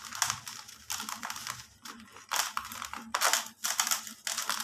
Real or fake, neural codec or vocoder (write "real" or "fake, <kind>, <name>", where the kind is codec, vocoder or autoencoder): real